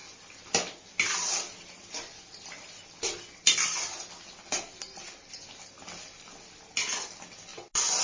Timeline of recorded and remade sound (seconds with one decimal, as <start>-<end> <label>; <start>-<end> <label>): 0.0-8.0 recorded